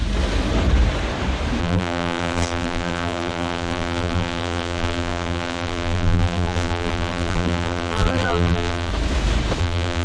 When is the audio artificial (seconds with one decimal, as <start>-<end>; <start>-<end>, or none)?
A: 1.6-8.9; 9.6-10.0